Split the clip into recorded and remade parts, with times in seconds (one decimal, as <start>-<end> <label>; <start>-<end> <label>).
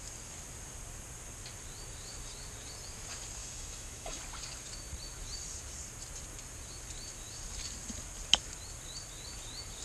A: 0.0-3.4 recorded; 3.4-4.2 remade; 4.2-9.8 recorded